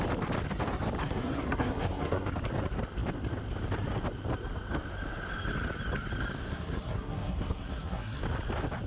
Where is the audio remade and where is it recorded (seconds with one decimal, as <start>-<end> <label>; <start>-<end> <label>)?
0.0-1.0 recorded; 1.0-2.3 remade; 2.3-6.5 recorded; 6.5-8.2 remade; 8.2-8.9 recorded